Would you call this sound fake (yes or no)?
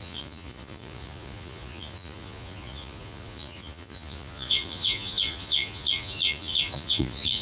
yes